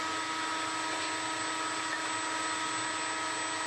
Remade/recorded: recorded